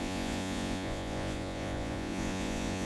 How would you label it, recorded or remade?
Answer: remade